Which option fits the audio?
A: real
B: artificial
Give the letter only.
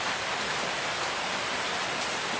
A